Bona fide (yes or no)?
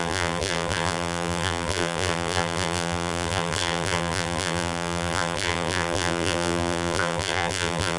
no